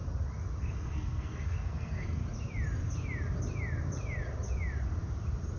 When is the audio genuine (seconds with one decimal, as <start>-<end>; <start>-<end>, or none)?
0.0-0.6; 2.2-5.6

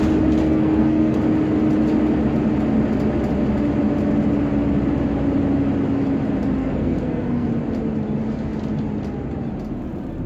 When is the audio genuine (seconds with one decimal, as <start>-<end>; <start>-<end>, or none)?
0.0-0.4; 1.2-6.6; 7.5-10.3

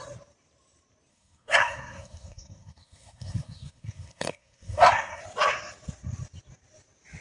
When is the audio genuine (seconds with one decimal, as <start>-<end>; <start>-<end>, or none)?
0.0-1.1; 5.2-7.2

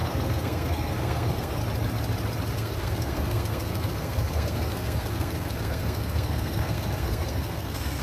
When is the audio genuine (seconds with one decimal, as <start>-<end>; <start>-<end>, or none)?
1.6-2.5

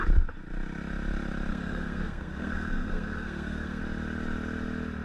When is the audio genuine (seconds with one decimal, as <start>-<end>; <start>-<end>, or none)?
0.0-1.5; 3.8-5.0

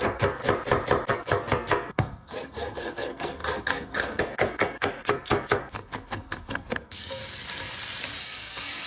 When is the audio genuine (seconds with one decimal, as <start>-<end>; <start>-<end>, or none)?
0.4-1.1; 7.2-8.2

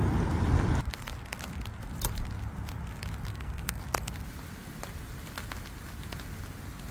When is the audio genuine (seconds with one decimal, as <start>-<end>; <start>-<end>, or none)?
0.0-3.3; 3.8-6.9